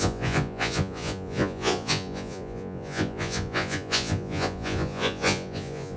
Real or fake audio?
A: fake